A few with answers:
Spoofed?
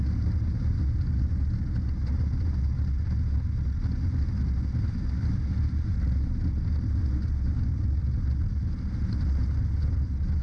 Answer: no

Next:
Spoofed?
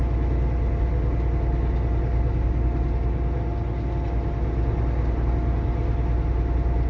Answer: no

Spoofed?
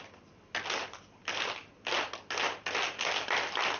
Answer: no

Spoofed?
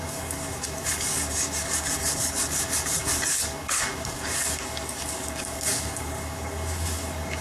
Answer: yes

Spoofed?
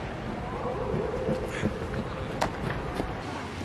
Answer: no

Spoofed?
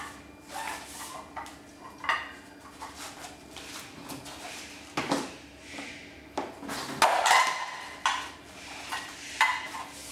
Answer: no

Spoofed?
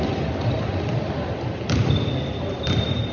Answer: no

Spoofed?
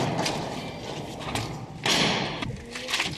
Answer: no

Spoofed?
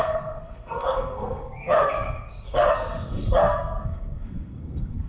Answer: yes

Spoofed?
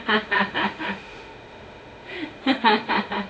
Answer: yes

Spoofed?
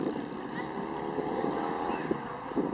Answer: no